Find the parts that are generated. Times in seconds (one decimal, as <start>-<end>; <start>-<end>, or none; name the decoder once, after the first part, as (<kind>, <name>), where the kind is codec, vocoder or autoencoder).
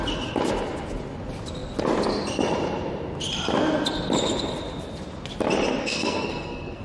5.8-6.8 (codec, SNAC)